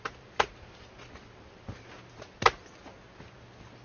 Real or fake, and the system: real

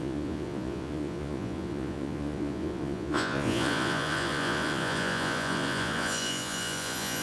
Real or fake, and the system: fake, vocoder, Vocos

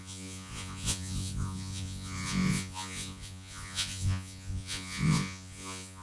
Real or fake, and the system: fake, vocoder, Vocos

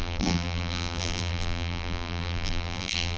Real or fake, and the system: fake, vocoder, BigVGAN v2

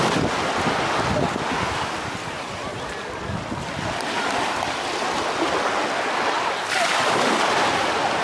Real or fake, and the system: real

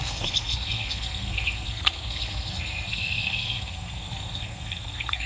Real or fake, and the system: fake, codec, SNAC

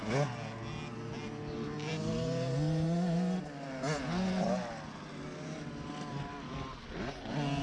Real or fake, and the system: real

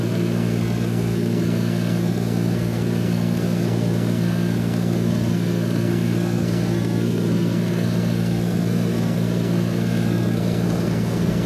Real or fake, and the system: fake, codec, SNAC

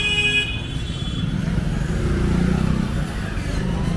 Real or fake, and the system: real